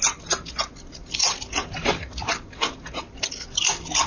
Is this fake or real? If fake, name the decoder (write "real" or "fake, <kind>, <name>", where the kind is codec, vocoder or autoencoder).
real